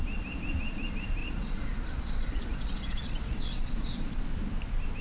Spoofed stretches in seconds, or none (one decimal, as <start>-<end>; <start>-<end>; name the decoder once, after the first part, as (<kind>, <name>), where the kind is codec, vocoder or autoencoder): 1.2-4.2 (vocoder, Vocos)